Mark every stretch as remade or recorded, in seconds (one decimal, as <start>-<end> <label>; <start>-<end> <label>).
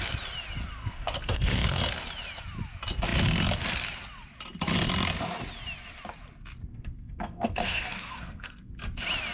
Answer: 0.0-0.8 recorded; 0.8-1.8 remade; 1.8-6.7 recorded; 6.7-8.7 remade; 8.7-9.3 recorded